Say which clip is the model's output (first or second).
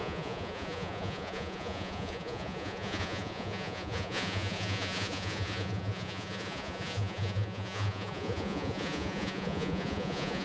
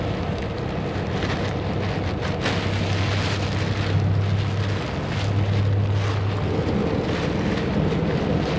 first